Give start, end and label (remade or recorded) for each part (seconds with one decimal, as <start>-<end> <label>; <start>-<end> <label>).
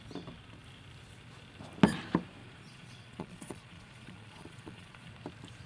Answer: 0.0-2.4 recorded; 2.4-5.1 remade; 5.1-5.7 recorded